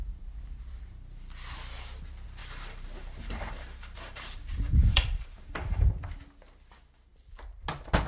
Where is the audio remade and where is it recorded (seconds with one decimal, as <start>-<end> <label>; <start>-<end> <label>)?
0.0-2.4 recorded; 2.4-5.9 remade; 5.9-8.1 recorded